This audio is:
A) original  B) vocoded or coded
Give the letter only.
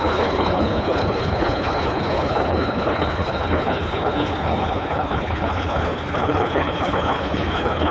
B